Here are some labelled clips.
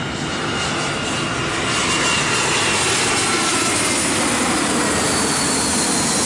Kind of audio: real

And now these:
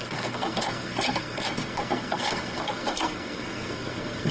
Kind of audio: fake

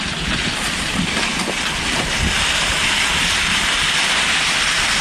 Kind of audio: real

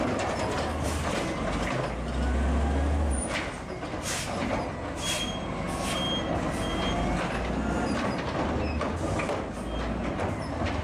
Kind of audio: real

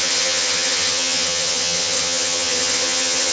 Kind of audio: fake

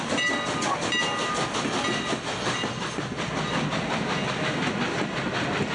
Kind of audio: real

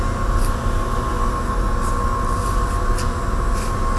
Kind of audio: real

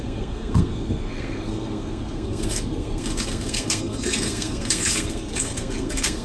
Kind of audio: fake